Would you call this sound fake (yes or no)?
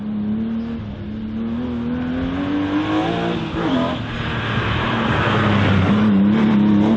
no